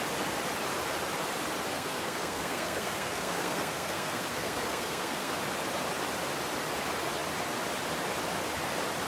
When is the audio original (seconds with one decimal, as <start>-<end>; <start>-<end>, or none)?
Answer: 0.0-1.7; 5.3-9.1